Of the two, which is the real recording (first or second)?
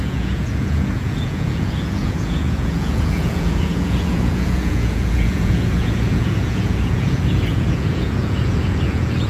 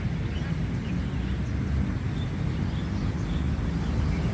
second